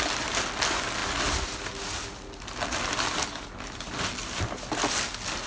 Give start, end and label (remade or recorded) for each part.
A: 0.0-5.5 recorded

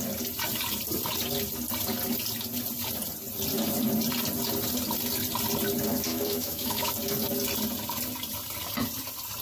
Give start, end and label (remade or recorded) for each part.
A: 0.0-6.1 recorded; 6.1-6.9 remade; 6.9-9.4 recorded

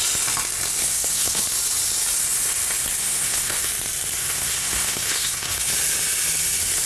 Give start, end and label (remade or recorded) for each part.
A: 0.0-0.8 recorded; 0.8-1.4 remade; 1.4-3.0 recorded; 3.0-3.7 remade; 3.7-4.2 recorded; 4.2-5.7 remade; 5.7-6.9 recorded

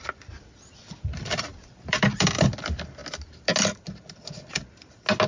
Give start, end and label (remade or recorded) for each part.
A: 0.0-1.5 recorded; 1.5-2.6 remade; 2.6-5.3 recorded

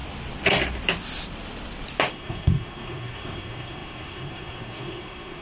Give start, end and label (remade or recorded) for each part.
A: 0.0-2.1 recorded; 2.1-5.4 remade

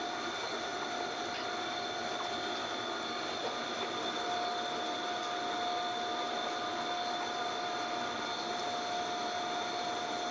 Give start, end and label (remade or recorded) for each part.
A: 0.0-10.3 recorded